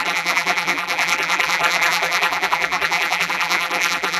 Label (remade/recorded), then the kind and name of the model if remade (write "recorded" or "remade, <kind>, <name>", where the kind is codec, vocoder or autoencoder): remade, vocoder, BigVGAN v2